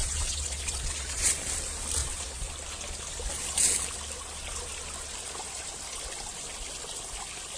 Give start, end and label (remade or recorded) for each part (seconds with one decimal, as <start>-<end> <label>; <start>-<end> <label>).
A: 0.0-1.3 remade; 1.3-2.0 recorded; 2.0-2.5 remade; 2.5-7.6 recorded